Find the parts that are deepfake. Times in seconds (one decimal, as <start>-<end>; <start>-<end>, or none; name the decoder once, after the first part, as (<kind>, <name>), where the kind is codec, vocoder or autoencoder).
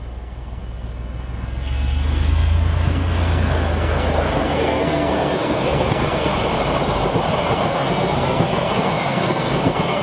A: 0.0-6.3 (codec, SNAC); 7.4-10.0